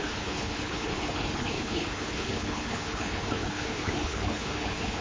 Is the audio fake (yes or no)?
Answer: yes